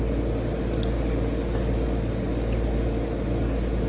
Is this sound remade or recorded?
recorded